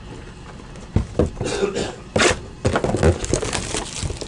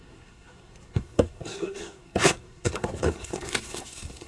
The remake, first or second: second